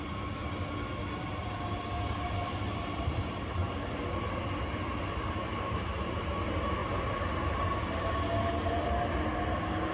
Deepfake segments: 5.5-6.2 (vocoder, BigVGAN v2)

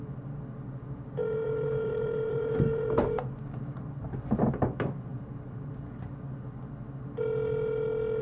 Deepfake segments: 1.2-4.5 (vocoder, BigVGAN v2); 5.1-5.7

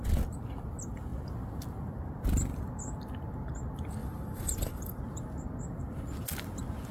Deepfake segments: 4.0-5.0 (vocoder, BigVGAN v2)

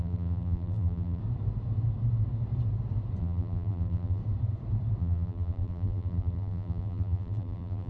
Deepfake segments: 0.0-1.2 (vocoder, BigVGAN v2); 3.2-4.2; 5.0-7.9

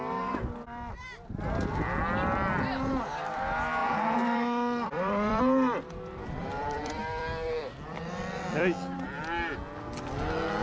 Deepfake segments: 3.8-5.4 (vocoder, BigVGAN v2); 6.4-9.2